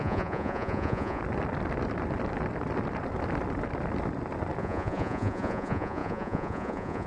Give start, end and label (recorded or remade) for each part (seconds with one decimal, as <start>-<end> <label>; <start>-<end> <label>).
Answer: 0.0-1.2 remade; 1.2-4.6 recorded; 4.6-7.1 remade